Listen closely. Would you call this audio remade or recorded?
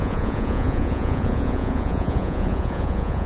remade